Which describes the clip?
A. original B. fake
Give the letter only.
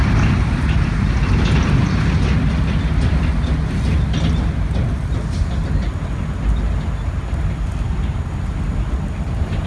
A